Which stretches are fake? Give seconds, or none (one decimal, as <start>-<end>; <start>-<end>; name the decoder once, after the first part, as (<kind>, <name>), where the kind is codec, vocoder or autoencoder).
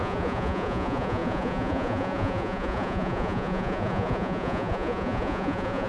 0.0-5.9 (vocoder, Vocos)